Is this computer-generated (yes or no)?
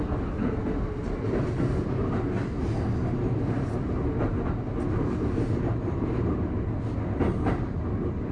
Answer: no